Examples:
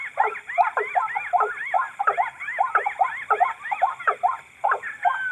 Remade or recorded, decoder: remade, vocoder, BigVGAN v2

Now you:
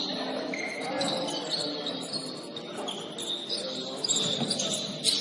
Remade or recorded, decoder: recorded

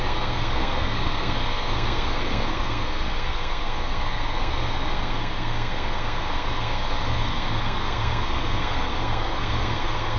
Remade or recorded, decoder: remade, codec, SNAC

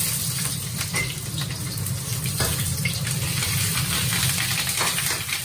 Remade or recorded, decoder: remade, vocoder, BigVGAN v2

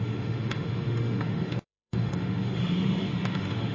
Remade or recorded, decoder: remade, autoencoder, DAC-VAE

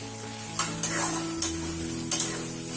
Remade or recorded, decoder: recorded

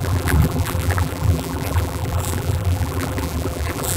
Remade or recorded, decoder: remade, vocoder, BigVGAN v2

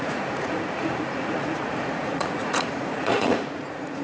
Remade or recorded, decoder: remade, vocoder, Vocos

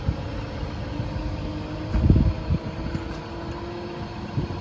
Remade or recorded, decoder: recorded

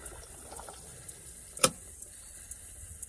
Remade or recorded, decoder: remade, vocoder, BigVGAN v2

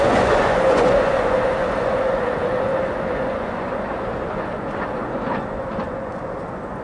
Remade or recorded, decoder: remade, vocoder, Vocos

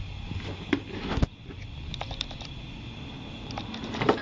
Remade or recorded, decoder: recorded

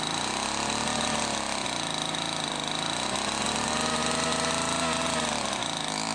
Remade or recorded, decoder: recorded